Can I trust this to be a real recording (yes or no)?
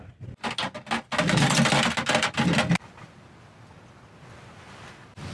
yes